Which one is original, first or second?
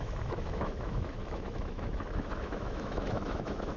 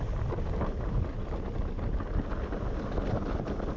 second